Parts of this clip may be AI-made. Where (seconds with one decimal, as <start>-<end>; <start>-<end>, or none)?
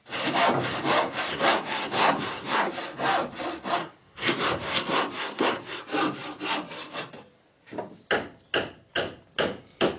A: 1.3-2.7; 3.8-5.8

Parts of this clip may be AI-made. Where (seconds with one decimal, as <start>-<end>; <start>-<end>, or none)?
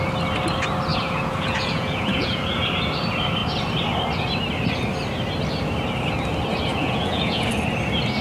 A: 0.9-2.6; 6.7-7.5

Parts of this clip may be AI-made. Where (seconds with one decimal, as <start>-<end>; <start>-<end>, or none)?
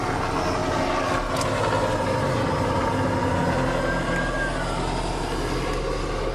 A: none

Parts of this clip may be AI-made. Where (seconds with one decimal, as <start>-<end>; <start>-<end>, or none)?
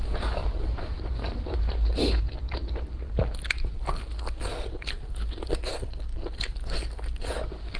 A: 0.4-1.6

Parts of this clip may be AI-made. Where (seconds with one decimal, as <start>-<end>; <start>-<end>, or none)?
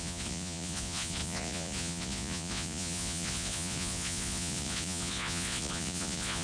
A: 0.0-6.4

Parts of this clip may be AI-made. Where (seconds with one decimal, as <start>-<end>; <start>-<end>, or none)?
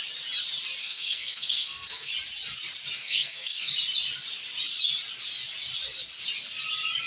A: 0.8-2.1; 3.0-3.7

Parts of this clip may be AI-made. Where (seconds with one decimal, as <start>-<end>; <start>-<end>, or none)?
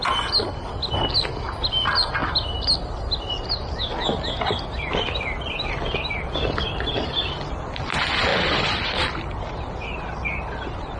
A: none